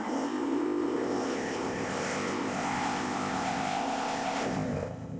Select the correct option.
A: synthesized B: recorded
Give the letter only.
A